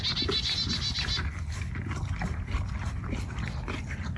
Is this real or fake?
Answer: real